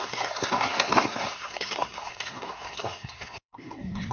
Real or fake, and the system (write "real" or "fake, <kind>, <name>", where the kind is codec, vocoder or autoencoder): fake, codec, SNAC